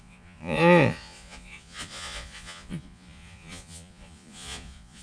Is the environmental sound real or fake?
fake